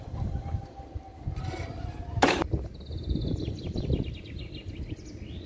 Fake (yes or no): no